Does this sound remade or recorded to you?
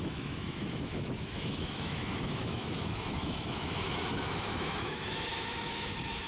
remade